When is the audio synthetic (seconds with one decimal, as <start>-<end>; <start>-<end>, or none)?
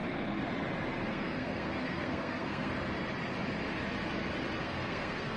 1.1-2.7; 4.6-5.4